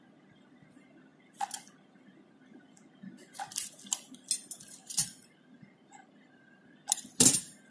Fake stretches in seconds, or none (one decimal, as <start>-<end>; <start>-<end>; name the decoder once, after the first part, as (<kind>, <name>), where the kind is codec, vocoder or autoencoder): 4.8-6.7 (vocoder, BigVGAN v2)